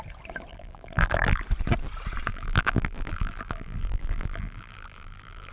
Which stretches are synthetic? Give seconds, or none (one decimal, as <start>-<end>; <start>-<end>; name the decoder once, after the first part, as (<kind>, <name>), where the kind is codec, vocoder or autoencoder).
0.5-1.4 (vocoder, BigVGAN v2); 2.3-5.5